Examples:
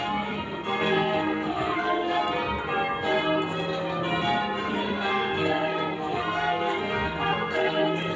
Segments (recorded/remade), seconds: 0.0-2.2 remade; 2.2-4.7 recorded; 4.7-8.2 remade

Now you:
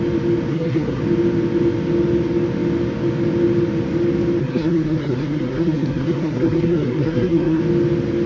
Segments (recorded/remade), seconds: 0.0-0.5 recorded; 0.5-1.0 remade; 1.0-4.4 recorded; 4.4-7.6 remade; 7.6-8.3 recorded